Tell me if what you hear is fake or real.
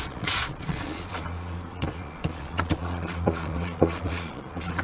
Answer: fake